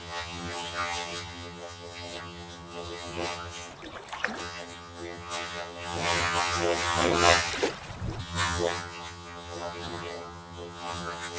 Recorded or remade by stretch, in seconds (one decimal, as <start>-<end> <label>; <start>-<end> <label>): 0.0-3.7 remade; 3.7-4.4 recorded; 4.4-7.5 remade; 7.5-8.2 recorded; 8.2-11.4 remade